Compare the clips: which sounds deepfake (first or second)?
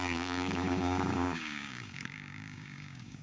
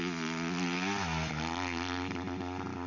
first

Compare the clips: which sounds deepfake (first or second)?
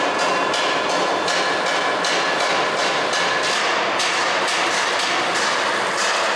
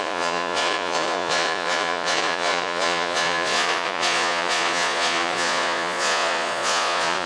second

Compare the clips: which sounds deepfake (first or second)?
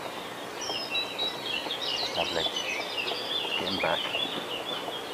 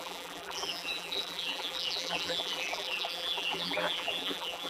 second